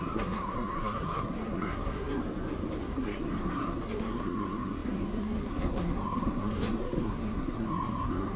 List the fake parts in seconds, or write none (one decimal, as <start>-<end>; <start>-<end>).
0.0-2.2; 2.8-8.4